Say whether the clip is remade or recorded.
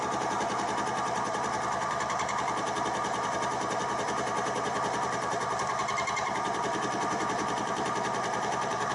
remade